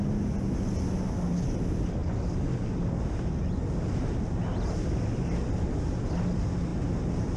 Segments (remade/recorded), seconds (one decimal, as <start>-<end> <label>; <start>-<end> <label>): 0.0-7.4 recorded